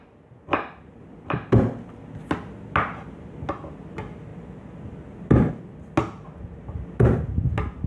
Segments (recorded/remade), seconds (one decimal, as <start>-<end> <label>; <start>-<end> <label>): 0.0-7.9 recorded

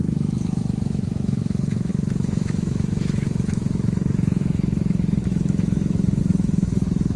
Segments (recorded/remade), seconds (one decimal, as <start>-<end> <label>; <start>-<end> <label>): 0.0-7.2 remade

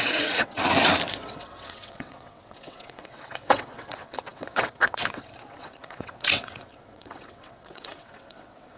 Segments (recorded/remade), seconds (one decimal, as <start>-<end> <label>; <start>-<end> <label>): 0.0-0.6 remade; 0.6-1.1 recorded; 1.1-8.8 remade